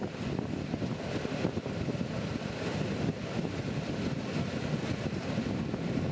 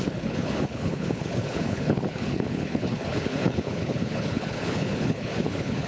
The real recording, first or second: first